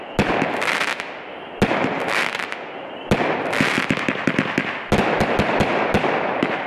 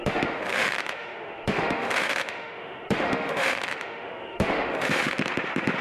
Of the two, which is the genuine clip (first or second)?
first